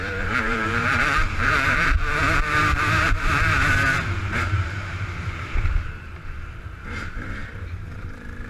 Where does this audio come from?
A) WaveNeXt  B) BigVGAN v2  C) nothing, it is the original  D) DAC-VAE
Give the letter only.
B